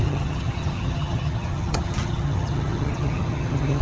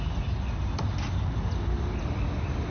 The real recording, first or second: second